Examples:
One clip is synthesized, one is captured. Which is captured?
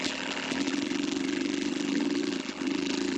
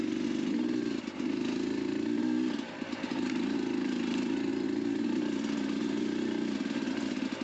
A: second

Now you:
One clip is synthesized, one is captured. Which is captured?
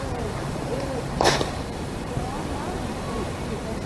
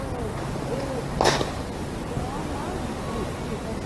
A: second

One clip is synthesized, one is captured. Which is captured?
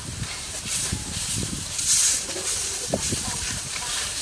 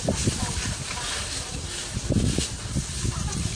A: second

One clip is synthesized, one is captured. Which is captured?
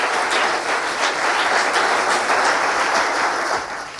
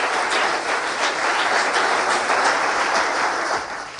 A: first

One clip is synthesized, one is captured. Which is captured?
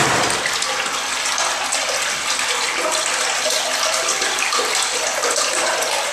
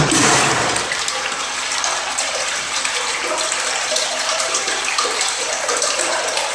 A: first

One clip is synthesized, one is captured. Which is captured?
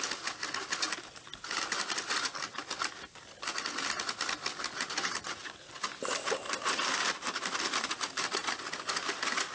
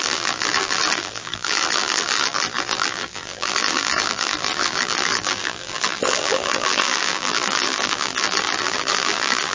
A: first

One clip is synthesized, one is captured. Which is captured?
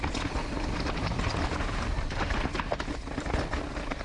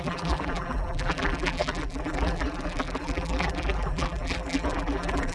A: first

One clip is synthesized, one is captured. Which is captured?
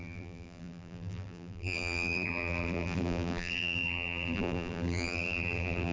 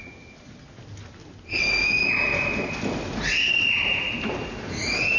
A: second